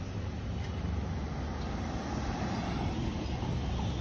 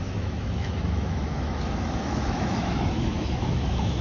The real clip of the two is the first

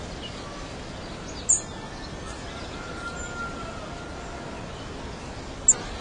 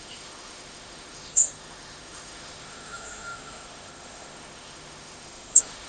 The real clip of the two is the first